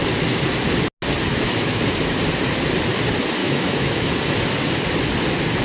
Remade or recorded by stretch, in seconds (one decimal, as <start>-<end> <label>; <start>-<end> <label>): 0.0-1.3 recorded; 1.3-1.8 remade; 1.8-3.4 recorded; 3.4-4.1 remade; 4.1-5.6 recorded